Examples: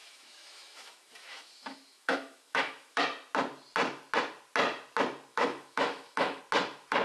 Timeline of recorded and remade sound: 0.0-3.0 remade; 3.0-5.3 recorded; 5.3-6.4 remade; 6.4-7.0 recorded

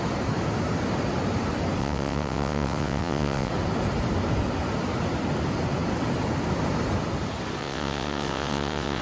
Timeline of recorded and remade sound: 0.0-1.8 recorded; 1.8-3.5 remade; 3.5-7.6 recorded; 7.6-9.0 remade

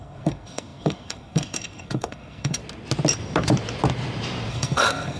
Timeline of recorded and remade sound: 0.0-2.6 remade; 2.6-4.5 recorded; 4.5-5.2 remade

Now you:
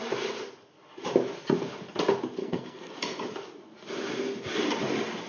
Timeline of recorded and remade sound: 0.0-2.4 recorded; 2.4-2.9 remade; 2.9-5.3 recorded

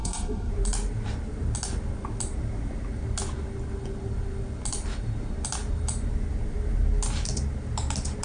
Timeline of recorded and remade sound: 0.0-0.5 remade; 0.5-8.2 recorded

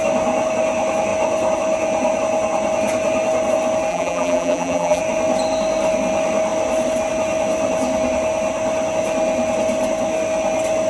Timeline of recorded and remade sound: 0.0-3.9 recorded; 3.9-5.0 remade; 5.0-10.9 recorded

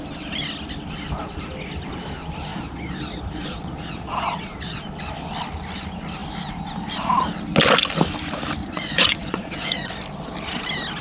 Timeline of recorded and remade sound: 0.0-2.5 recorded; 2.5-4.8 remade; 4.8-8.6 recorded; 8.6-9.9 remade; 9.9-11.0 recorded

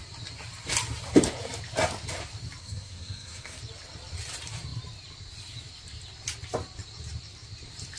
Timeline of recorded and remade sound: 0.0-2.6 recorded; 2.6-3.6 remade; 3.6-8.0 recorded